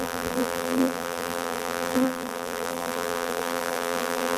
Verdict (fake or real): fake